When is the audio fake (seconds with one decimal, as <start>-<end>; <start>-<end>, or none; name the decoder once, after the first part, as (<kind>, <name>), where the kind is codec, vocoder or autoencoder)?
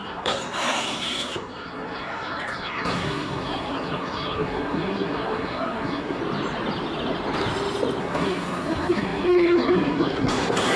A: 0.0-6.2 (codec, SNAC); 8.0-10.8